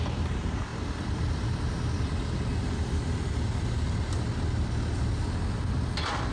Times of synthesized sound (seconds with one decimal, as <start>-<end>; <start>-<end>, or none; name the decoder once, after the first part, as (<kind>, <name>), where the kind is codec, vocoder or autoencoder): none